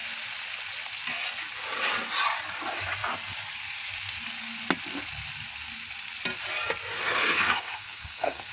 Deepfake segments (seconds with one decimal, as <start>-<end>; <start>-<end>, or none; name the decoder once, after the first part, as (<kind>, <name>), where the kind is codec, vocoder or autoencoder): 6.9-8.5 (codec, SNAC)